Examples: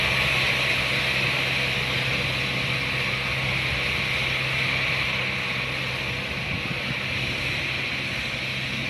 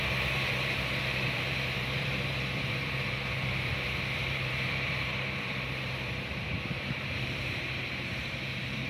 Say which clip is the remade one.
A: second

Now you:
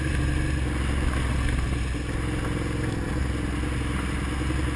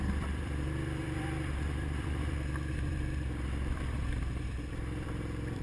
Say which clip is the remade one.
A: second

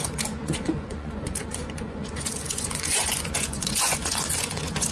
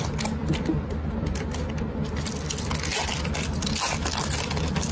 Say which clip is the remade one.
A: first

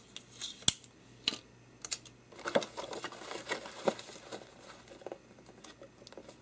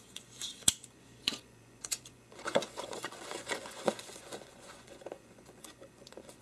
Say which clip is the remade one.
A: second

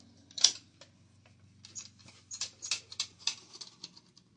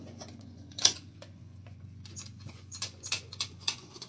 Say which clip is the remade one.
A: second